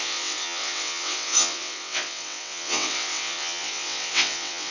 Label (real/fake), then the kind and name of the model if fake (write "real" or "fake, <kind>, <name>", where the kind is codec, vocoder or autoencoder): fake, vocoder, WaveNeXt